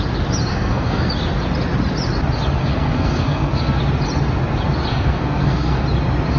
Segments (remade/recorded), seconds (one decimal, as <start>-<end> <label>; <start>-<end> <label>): 0.0-0.5 recorded; 0.5-1.1 remade; 1.1-2.6 recorded; 2.6-3.8 remade; 3.8-4.9 recorded; 4.9-5.8 remade; 5.8-6.4 recorded